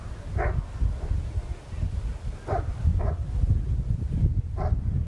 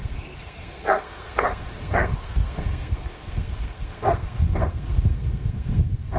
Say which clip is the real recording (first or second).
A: first